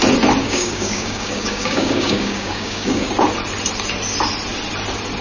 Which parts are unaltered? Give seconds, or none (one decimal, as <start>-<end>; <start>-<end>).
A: 0.0-0.4; 3.1-5.2